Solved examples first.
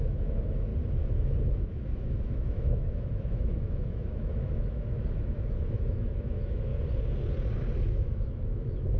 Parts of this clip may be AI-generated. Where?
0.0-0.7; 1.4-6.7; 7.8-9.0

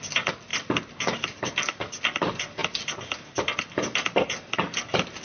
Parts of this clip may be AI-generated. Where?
none